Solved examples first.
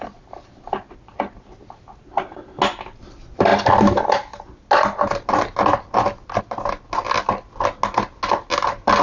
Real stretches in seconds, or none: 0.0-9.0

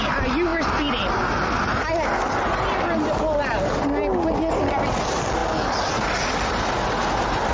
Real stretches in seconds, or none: 0.0-7.5